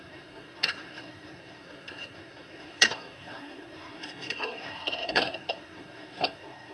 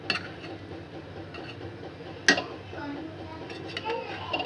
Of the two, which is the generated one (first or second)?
first